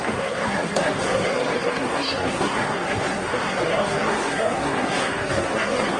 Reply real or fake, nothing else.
fake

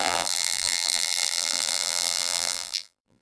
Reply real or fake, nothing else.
fake